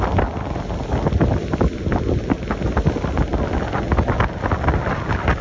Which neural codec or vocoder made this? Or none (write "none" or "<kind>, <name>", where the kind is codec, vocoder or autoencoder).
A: none